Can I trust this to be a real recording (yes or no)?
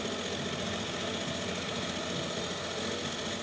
yes